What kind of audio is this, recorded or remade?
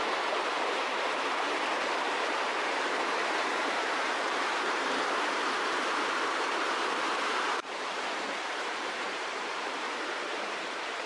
remade